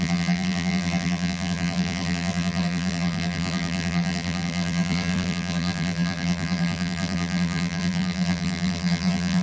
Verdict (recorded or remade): remade